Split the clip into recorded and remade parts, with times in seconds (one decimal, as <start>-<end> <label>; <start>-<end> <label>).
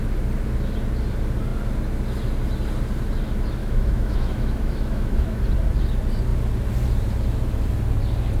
0.0-3.6 recorded; 3.6-5.4 remade; 5.4-8.4 recorded